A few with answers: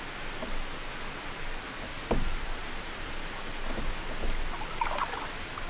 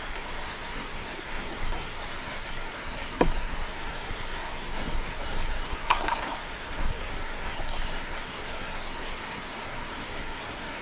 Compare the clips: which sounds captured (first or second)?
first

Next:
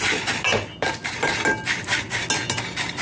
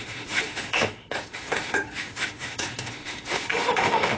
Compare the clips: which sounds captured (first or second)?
first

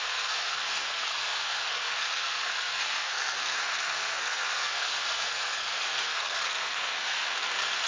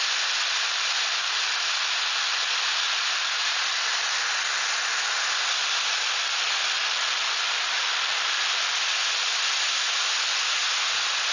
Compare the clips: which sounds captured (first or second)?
second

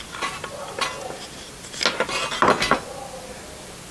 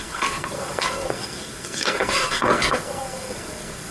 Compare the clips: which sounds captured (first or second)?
first